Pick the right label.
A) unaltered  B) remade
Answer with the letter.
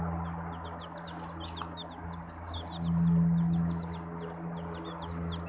A